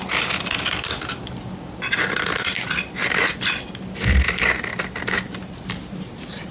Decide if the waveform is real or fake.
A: real